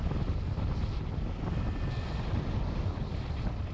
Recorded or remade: recorded